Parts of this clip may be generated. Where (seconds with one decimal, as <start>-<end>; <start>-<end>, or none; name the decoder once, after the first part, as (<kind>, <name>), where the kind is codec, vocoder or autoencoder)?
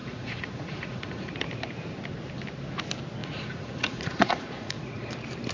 0.0-1.3 (vocoder, Vocos); 3.2-5.1